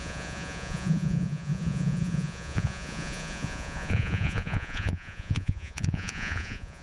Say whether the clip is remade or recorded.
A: remade